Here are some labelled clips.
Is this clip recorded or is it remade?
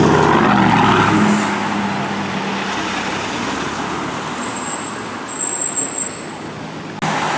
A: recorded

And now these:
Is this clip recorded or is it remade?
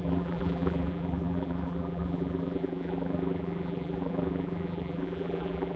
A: remade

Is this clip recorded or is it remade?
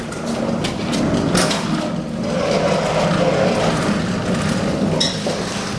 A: recorded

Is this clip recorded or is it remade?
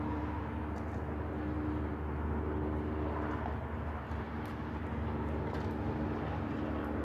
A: recorded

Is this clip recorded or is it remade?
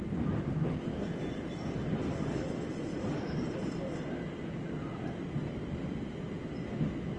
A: remade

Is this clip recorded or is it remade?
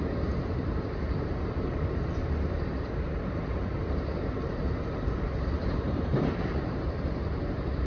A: remade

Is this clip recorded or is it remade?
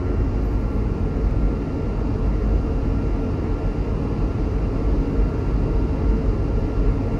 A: recorded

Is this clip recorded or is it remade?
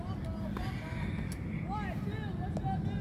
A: recorded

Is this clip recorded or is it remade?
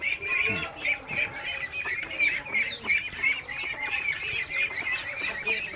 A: remade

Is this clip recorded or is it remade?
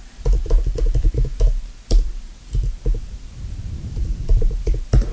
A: remade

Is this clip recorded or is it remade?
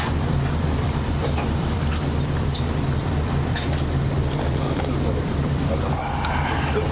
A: remade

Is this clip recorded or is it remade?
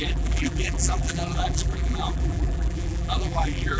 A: remade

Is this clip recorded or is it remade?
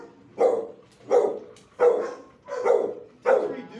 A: remade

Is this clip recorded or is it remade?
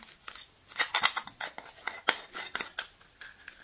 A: recorded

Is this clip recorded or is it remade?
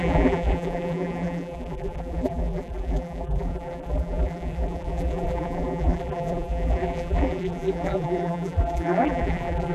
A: remade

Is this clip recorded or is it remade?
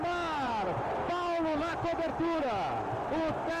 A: recorded